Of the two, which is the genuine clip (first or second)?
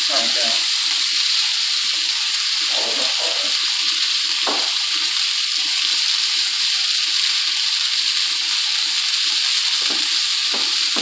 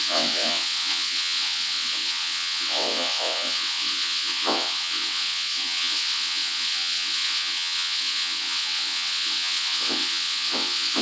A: first